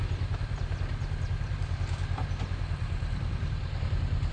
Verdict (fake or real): real